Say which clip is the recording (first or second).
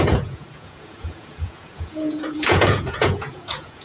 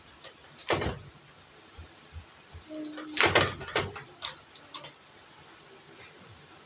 second